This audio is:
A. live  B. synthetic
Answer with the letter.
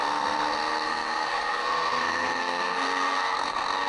B